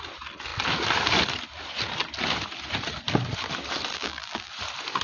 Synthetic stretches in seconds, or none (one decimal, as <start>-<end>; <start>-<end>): 3.9-4.5